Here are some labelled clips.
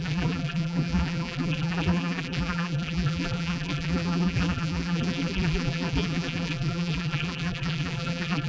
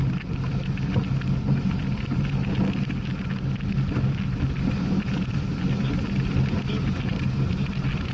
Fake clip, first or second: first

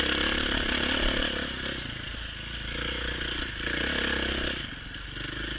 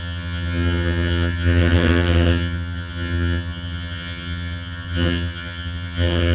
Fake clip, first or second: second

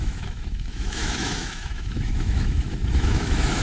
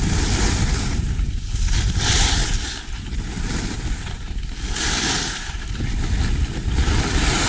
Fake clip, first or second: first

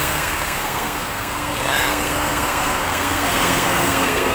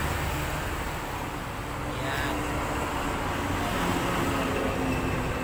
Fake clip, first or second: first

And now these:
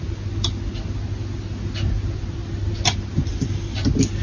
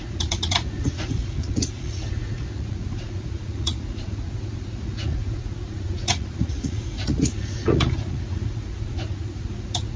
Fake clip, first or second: second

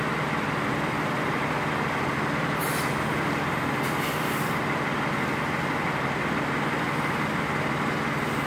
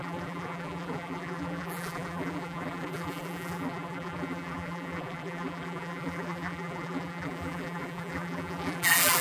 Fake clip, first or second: second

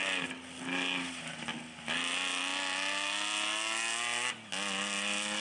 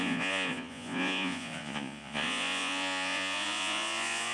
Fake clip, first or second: second